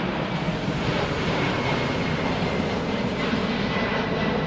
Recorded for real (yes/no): no